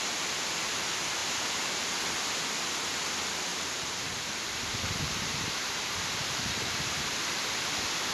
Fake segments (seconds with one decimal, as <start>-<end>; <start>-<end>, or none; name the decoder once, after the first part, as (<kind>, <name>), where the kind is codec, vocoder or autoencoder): 3.5-7.0 (vocoder, BigVGAN v2)